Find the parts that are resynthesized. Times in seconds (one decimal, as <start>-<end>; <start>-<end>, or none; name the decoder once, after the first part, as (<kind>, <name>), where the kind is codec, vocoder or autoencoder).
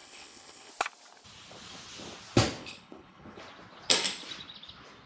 0.0-0.7 (codec, HILCodec); 2.6-3.4